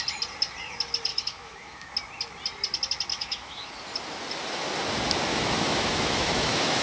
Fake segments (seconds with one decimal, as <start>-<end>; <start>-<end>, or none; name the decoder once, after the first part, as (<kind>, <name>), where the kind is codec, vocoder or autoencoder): 1.1-1.9 (autoencoder, DAC-VAE); 3.1-3.7; 5.3-6.8